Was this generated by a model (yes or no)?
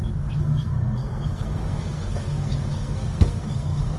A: yes